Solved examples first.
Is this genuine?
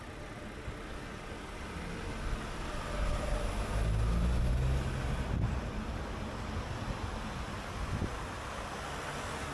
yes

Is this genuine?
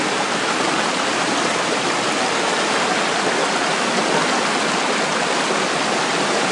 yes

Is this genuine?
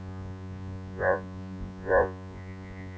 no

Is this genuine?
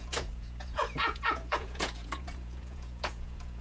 no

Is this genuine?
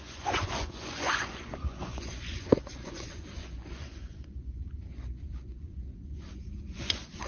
no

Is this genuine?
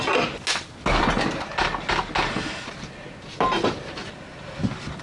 yes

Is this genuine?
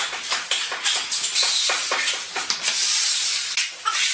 yes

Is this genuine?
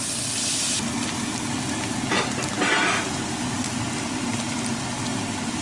yes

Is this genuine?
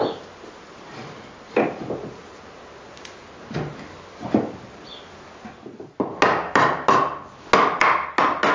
yes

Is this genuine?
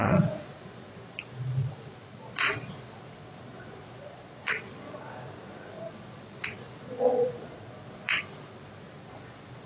no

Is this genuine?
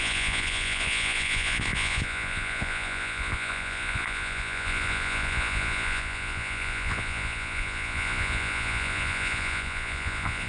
no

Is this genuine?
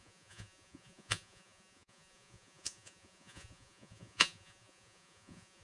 no